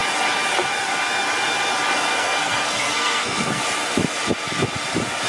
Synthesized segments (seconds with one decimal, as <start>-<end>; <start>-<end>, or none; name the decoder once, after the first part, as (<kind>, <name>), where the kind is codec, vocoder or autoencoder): 2.1-3.6 (codec, SNAC)

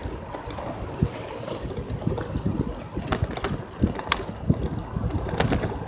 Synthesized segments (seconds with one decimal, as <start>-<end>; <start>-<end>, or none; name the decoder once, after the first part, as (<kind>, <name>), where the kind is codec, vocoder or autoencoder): none

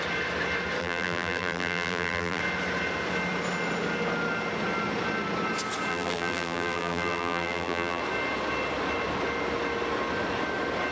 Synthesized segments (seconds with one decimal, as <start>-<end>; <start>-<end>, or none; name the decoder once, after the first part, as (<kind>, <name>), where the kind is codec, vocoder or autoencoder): 0.8-2.4 (vocoder, BigVGAN v2); 5.9-8.0

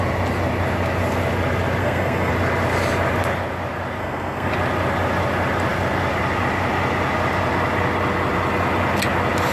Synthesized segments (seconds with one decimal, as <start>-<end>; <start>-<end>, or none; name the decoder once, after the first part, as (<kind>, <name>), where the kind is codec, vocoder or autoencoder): 1.8-2.3 (codec, SNAC); 4.0-4.5

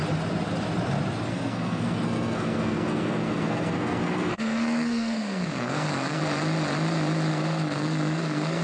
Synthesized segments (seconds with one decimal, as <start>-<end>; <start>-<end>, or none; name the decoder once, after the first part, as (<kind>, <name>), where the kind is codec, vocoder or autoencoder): 1.3-6.2 (codec, SNAC); 7.3-8.6

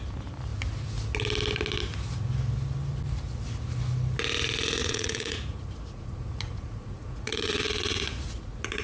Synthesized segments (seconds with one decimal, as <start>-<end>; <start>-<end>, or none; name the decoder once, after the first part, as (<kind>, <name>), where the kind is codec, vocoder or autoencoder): 4.8-8.8 (vocoder, Vocos)